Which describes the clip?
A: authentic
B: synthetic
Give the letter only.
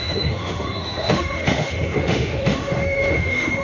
B